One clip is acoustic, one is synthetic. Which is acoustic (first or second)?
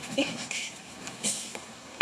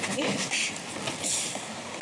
second